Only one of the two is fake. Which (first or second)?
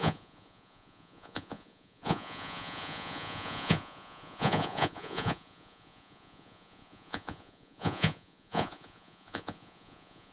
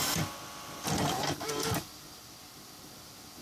first